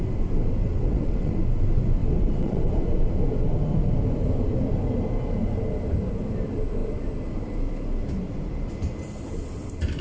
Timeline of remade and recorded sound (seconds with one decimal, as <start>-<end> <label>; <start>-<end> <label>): 0.0-0.6 recorded; 0.6-1.3 remade; 1.3-2.0 recorded; 2.0-2.8 remade; 2.8-10.0 recorded